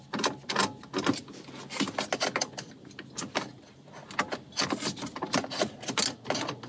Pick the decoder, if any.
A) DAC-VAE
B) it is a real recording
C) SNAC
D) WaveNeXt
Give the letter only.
B